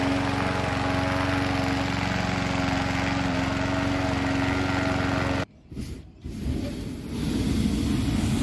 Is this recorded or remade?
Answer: recorded